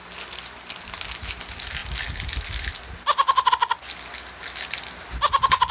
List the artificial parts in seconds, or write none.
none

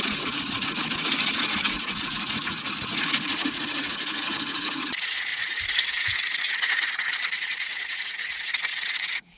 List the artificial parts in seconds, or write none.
0.0-9.4 (vocoder, Vocos)